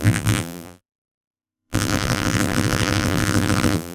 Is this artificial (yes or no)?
yes